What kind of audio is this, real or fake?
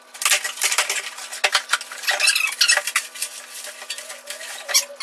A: real